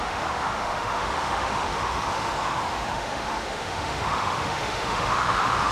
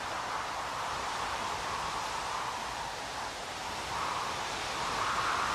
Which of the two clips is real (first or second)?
second